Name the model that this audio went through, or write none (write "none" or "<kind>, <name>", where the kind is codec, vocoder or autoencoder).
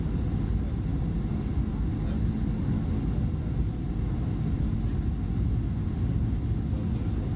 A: none